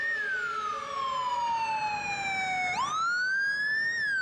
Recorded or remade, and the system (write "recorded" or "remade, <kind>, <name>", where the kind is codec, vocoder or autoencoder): recorded